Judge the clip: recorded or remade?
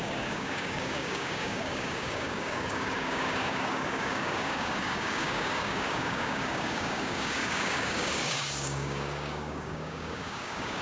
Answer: remade